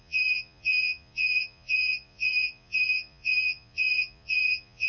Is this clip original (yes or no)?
no